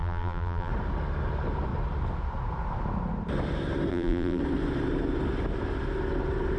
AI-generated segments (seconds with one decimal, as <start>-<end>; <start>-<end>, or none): 0.0-0.7; 3.9-4.4